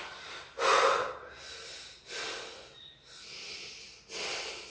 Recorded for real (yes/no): yes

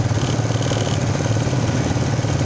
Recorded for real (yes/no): yes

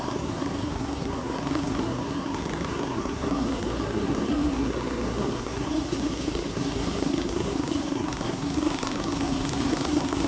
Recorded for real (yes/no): no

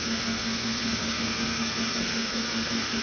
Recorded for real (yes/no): no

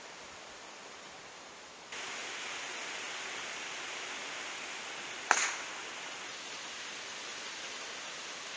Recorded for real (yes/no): yes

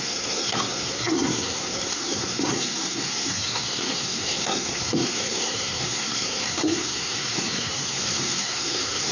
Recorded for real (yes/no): no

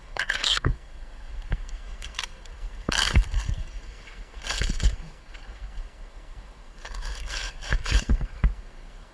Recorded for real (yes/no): no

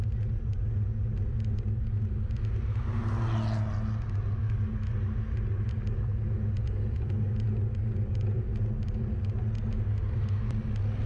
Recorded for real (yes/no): yes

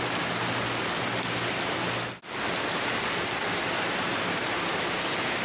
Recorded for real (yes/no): yes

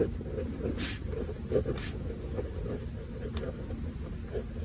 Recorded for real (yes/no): yes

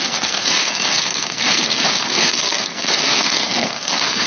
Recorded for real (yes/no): no